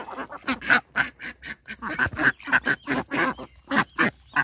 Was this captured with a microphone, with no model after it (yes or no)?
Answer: yes